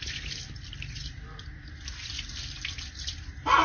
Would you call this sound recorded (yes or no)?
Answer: no